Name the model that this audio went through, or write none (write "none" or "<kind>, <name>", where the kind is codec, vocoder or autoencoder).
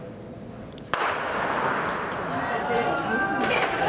none